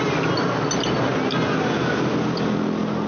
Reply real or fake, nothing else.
real